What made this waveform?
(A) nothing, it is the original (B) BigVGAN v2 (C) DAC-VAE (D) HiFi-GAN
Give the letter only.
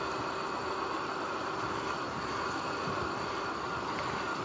A